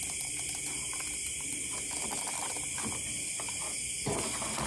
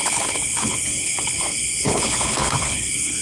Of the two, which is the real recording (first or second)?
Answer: first